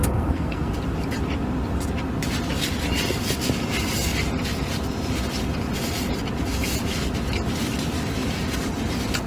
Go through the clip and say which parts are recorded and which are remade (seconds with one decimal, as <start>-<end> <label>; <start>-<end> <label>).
0.0-0.7 remade; 0.7-9.3 recorded

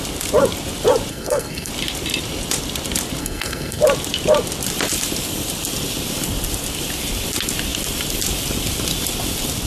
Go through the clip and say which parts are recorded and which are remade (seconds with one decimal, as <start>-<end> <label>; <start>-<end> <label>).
0.0-1.1 recorded; 1.1-1.7 remade; 1.7-3.2 recorded; 3.2-3.8 remade; 3.8-9.7 recorded

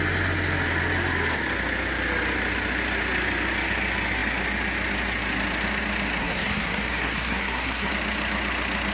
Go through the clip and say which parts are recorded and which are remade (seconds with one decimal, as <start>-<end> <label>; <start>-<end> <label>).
0.0-6.2 recorded; 6.2-7.9 remade; 7.9-8.9 recorded

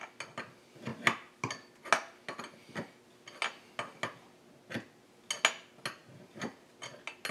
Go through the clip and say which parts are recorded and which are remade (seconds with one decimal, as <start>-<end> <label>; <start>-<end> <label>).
0.0-7.3 recorded

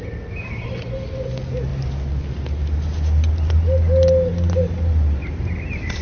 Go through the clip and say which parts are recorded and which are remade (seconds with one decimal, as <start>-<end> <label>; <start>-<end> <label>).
0.0-6.0 recorded

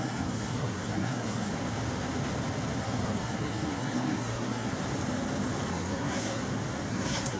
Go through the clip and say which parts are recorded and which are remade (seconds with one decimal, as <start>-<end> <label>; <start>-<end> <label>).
0.0-1.5 remade; 1.5-2.8 recorded; 2.8-4.7 remade; 4.7-5.7 recorded; 5.7-6.4 remade; 6.4-6.9 recorded; 6.9-7.4 remade

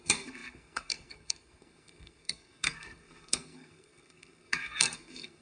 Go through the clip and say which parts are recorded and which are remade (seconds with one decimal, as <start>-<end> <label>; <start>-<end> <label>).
0.0-5.4 remade